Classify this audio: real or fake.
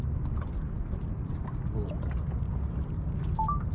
real